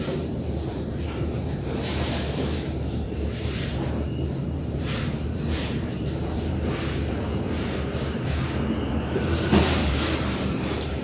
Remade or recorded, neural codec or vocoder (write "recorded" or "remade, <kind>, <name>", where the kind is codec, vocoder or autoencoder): remade, vocoder, BigVGAN v2